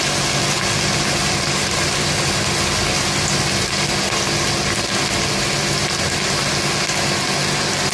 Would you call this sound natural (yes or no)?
yes